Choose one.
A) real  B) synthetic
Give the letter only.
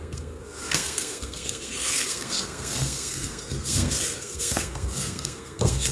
B